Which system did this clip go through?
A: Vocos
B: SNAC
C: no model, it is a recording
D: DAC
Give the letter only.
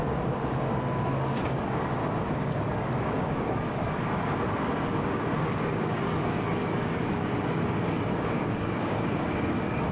D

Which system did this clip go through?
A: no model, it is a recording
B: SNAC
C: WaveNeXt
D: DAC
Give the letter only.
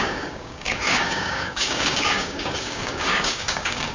D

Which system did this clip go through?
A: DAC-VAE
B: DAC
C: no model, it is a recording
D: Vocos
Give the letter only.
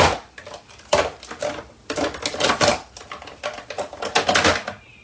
C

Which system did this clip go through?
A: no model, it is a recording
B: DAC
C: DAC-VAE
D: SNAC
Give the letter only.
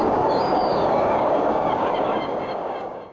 B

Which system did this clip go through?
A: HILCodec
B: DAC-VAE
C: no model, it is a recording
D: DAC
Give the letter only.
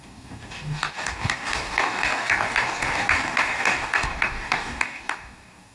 D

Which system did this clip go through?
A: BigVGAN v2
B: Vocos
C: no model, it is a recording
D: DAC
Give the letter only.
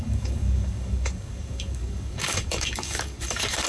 D